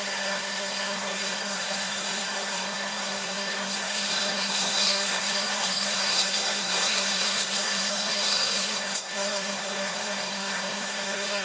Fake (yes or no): yes